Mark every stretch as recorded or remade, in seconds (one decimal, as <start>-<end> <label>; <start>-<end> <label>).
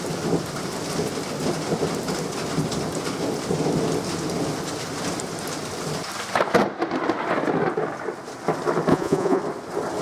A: 0.0-8.9 recorded; 8.9-9.4 remade; 9.4-10.0 recorded